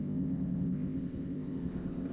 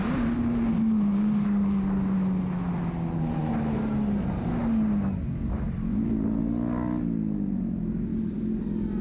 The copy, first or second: first